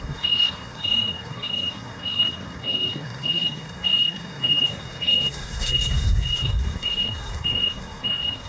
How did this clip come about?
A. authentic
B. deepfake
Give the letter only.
B